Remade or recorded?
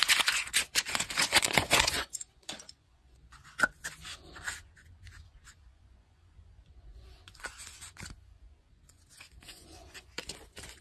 remade